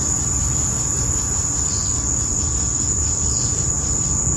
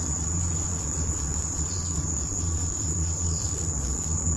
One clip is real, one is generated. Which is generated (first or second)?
second